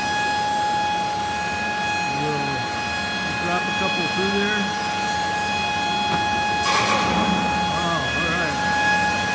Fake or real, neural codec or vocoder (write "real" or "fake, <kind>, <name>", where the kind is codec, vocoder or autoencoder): real